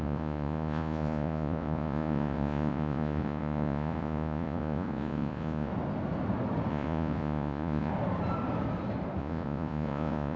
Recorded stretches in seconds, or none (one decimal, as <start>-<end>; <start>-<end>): 5.7-6.7; 7.9-9.2